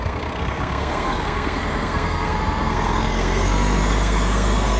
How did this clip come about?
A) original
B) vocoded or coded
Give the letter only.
B